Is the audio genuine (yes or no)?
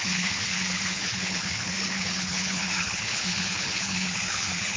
no